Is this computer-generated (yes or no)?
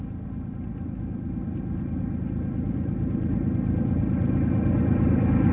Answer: no